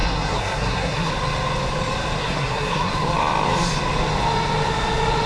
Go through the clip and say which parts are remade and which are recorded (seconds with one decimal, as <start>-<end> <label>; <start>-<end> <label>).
0.0-1.1 remade; 1.1-2.2 recorded; 2.2-2.9 remade; 2.9-5.3 recorded